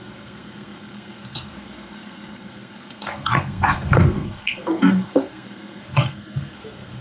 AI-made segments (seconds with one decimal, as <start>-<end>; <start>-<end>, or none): 0.0-7.0